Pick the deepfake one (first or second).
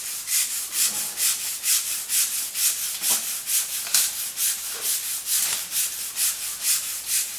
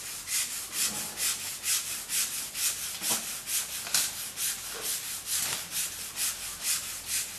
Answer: first